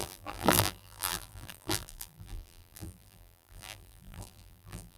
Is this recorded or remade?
remade